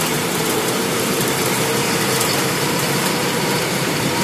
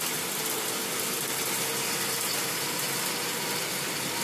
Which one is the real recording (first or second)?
second